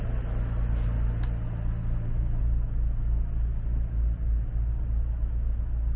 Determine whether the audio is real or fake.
real